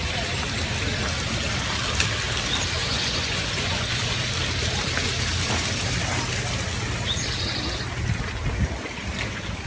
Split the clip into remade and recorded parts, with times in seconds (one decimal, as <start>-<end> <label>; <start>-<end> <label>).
0.0-2.8 recorded; 2.8-4.2 remade; 4.2-9.7 recorded